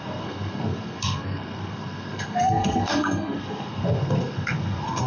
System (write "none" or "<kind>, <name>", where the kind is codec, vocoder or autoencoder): codec, SNAC